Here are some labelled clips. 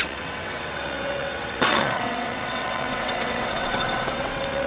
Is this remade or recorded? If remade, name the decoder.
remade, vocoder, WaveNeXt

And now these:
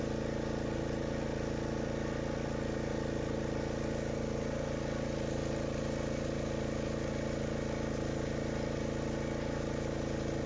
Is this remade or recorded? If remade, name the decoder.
recorded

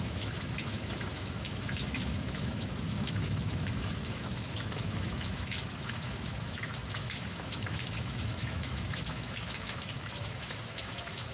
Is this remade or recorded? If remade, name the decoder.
remade, autoencoder, DAC-VAE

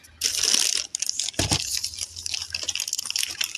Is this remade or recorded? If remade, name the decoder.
recorded